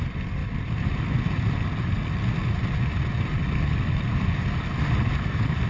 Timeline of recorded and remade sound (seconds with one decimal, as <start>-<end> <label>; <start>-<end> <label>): 0.0-5.7 recorded